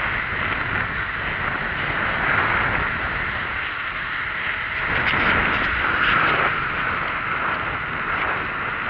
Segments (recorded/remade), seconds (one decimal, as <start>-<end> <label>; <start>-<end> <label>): 0.0-8.9 recorded